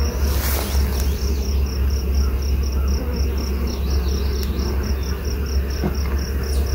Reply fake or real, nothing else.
real